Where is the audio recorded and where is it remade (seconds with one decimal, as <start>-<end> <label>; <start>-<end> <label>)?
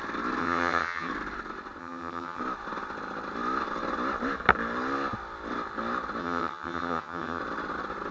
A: 0.0-0.4 recorded; 0.4-1.1 remade; 1.1-1.8 recorded; 1.8-2.4 remade; 2.4-6.2 recorded; 6.2-7.4 remade; 7.4-8.1 recorded